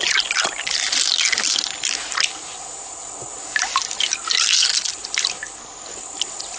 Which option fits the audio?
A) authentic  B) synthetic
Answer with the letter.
A